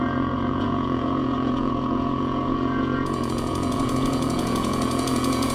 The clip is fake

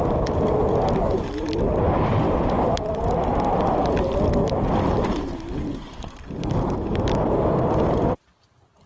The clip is real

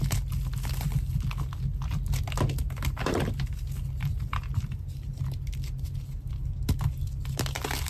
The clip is real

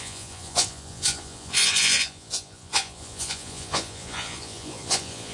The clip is fake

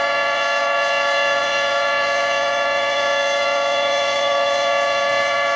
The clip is fake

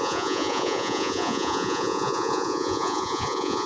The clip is fake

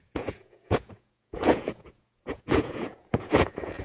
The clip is fake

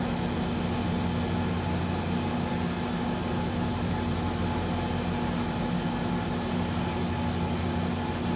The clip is real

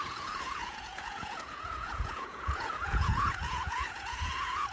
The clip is fake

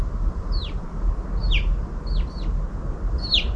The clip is real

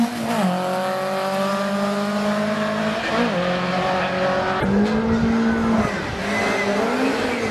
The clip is real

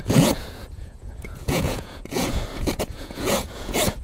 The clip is fake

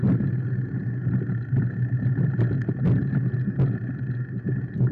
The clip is real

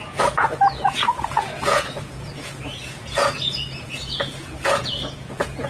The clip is fake